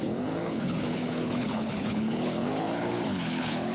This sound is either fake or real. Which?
fake